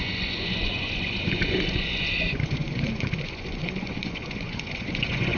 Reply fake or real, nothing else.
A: fake